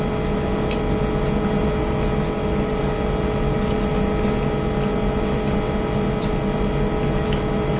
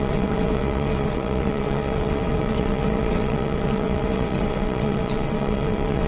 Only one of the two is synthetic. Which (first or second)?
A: second